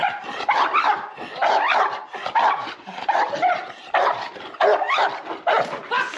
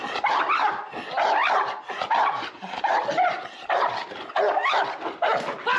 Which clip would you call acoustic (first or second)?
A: second